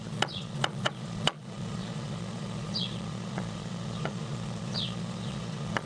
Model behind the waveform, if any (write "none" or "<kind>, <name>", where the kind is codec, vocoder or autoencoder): vocoder, Vocos